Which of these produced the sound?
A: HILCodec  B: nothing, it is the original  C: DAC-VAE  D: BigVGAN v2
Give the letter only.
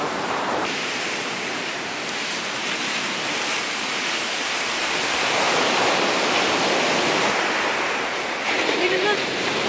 D